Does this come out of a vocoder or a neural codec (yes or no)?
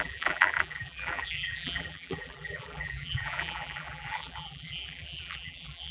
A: yes